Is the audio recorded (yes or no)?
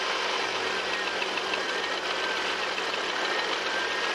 yes